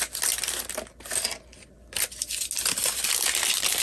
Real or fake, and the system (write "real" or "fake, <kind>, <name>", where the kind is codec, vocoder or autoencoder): real